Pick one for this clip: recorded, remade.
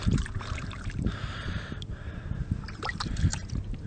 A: remade